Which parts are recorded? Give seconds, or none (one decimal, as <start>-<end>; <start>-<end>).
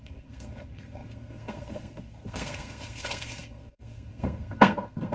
none